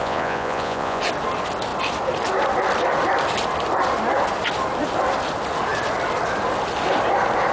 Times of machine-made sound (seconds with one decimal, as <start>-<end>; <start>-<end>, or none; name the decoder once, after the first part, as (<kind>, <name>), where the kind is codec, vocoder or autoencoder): 0.0-1.0 (vocoder, Vocos)